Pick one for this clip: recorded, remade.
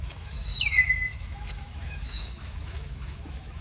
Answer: remade